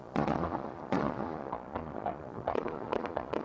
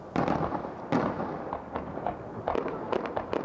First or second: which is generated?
first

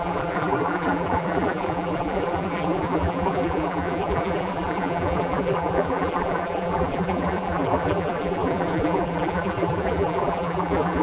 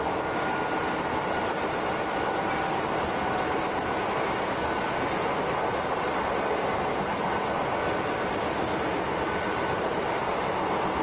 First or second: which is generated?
first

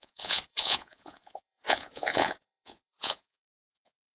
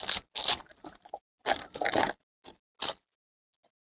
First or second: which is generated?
first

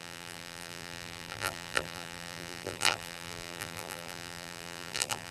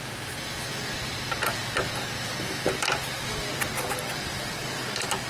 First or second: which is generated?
first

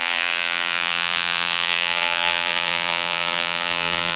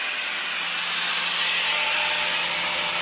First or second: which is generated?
first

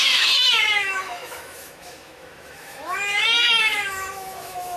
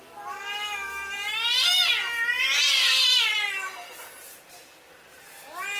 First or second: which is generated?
first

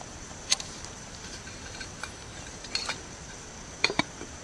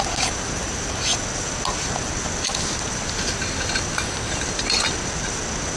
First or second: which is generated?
first